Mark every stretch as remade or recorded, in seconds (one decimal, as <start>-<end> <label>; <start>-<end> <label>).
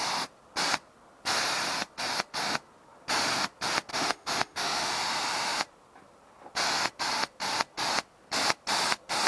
0.0-3.9 recorded; 3.9-4.9 remade; 4.9-9.3 recorded